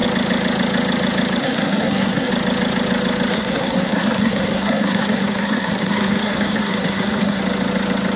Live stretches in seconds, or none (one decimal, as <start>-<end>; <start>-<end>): 0.0-1.4; 2.3-3.3; 7.4-8.2